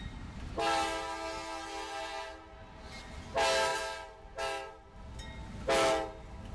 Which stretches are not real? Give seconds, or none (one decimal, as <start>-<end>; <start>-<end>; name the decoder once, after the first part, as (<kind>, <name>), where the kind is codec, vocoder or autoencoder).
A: none